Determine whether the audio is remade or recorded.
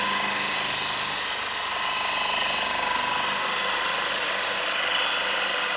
recorded